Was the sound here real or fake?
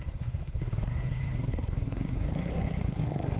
fake